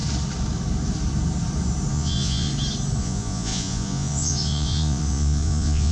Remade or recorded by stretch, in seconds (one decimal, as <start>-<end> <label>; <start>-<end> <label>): 0.0-1.9 recorded; 1.9-2.5 remade; 2.5-3.0 recorded; 3.0-5.9 remade